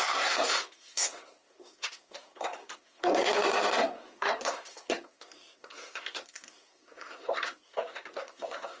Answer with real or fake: fake